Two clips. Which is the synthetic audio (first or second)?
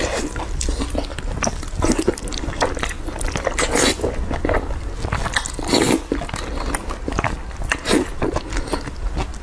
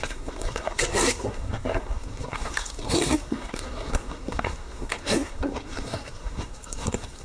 second